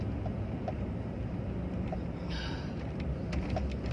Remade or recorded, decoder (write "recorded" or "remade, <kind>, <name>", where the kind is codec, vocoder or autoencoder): recorded